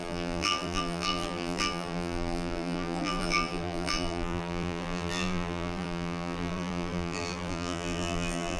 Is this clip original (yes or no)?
no